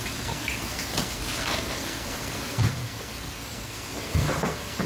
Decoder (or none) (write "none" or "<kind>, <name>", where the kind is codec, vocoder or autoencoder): codec, SNAC